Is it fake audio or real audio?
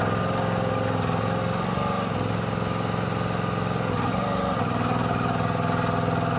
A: real